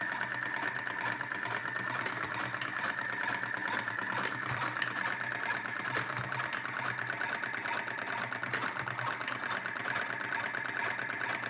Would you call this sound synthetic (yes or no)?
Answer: no